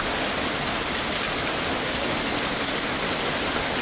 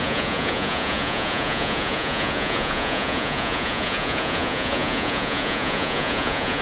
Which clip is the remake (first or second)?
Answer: second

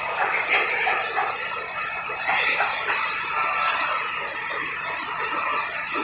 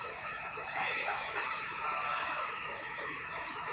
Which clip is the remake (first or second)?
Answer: second